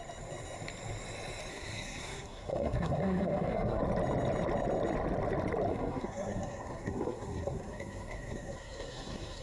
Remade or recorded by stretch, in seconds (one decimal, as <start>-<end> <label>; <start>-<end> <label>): 0.0-1.5 recorded; 1.5-3.8 remade; 3.8-5.7 recorded; 5.7-9.4 remade